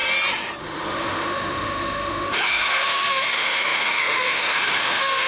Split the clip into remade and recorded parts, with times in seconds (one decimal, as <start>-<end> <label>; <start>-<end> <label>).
0.0-0.6 recorded; 0.6-5.3 remade